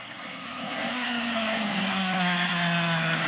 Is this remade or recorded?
remade